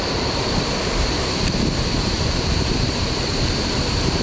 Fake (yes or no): yes